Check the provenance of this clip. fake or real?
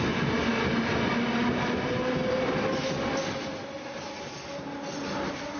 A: real